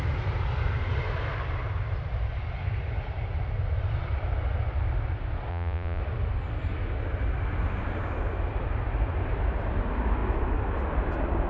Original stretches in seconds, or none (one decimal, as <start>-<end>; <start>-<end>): 0.0-5.5; 6.0-11.5